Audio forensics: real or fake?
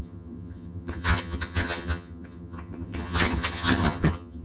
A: fake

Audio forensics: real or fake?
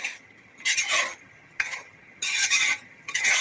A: fake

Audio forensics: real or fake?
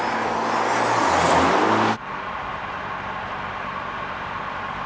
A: real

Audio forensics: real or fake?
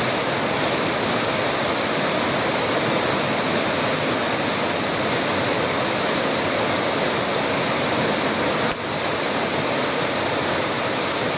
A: real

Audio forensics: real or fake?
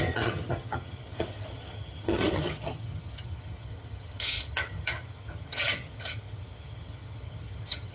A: fake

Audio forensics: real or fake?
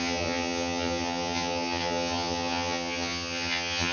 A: fake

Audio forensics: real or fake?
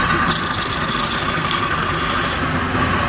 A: real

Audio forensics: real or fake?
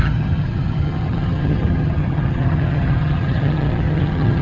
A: fake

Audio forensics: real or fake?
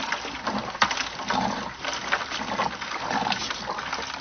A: real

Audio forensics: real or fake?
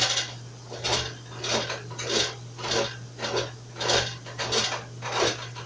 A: real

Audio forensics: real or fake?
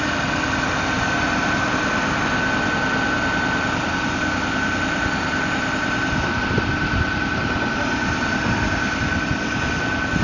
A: real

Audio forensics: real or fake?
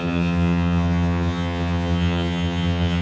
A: fake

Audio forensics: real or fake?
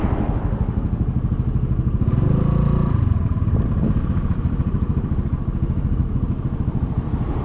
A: real